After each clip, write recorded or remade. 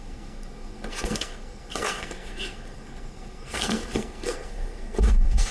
remade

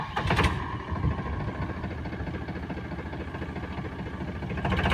recorded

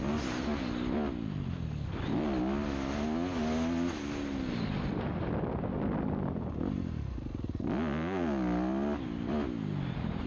recorded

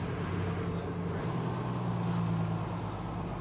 recorded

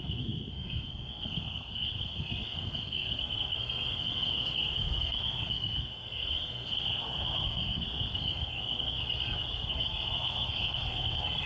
remade